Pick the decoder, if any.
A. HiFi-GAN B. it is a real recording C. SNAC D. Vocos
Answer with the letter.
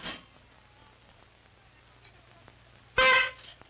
B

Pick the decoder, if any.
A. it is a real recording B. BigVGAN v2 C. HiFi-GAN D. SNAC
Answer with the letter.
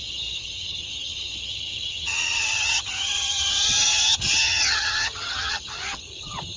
C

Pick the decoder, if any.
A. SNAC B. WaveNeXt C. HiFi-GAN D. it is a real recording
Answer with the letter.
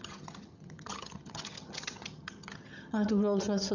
C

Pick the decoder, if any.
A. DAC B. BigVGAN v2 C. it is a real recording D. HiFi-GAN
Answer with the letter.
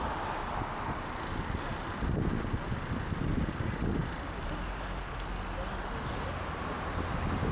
C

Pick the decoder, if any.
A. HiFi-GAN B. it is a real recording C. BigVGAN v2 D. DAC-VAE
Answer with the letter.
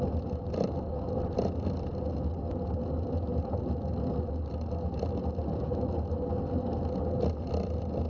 B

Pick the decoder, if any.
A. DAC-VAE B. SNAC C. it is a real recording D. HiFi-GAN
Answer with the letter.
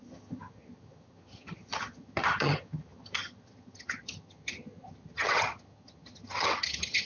D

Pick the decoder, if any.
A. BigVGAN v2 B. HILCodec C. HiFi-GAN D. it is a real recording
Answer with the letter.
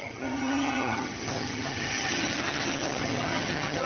C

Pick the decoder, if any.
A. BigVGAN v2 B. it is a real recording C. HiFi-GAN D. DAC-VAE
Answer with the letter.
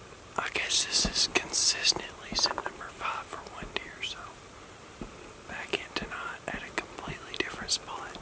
B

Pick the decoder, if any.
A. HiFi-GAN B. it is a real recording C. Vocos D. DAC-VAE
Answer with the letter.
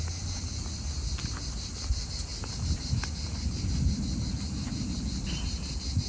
B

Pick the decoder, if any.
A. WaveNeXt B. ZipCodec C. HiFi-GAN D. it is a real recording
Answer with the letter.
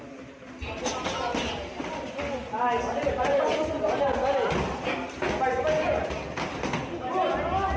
D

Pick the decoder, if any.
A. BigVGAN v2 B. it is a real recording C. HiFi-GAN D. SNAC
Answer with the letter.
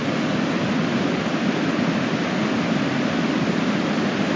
B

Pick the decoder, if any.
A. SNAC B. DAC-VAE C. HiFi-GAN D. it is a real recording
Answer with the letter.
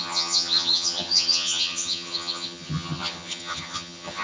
C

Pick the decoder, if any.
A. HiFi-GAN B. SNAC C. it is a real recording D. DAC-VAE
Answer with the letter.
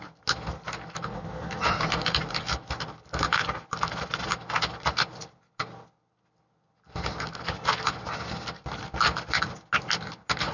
C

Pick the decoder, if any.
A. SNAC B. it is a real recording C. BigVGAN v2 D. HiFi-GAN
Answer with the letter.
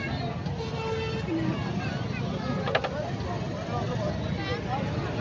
B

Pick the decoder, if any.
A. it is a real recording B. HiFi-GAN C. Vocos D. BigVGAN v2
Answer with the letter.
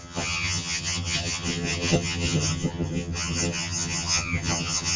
B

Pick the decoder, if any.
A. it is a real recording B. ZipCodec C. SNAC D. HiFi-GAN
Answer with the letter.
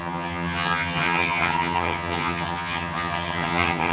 D